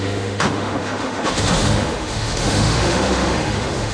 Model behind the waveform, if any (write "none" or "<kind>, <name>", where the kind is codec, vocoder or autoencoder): autoencoder, DAC-VAE